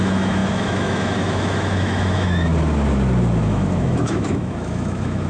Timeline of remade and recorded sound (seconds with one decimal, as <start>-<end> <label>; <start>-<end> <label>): 0.0-2.5 remade; 2.5-3.4 recorded; 3.4-5.3 remade